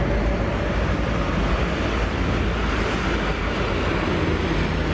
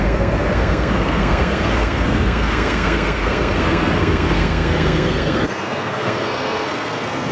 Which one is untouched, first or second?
first